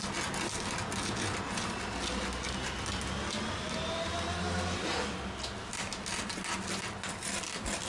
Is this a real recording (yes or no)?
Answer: yes